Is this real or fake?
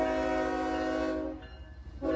real